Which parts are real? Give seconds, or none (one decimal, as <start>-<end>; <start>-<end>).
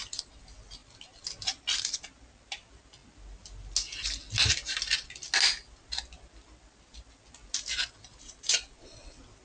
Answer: 0.0-9.4